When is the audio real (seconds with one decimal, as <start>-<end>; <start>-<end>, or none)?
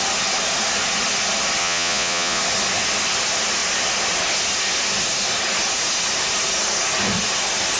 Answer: 0.0-1.6; 2.4-7.8